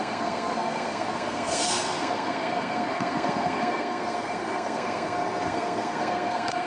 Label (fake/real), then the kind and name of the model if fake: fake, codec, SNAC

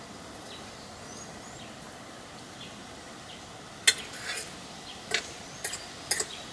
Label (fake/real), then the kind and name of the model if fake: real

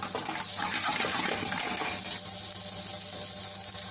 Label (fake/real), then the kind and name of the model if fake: real